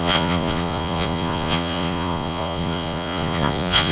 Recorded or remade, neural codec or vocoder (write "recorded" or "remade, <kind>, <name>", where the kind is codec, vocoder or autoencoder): remade, vocoder, Vocos